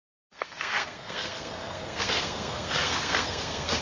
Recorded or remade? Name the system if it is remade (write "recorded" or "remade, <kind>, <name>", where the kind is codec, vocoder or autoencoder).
remade, codec, SNAC